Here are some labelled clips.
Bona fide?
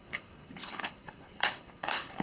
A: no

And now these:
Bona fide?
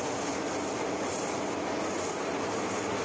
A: yes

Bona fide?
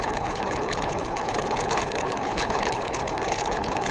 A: no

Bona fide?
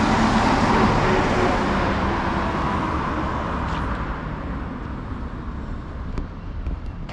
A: yes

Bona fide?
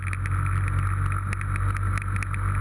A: yes